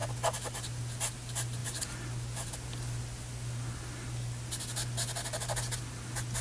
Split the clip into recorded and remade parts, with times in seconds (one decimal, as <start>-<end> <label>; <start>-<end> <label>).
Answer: 0.0-6.4 recorded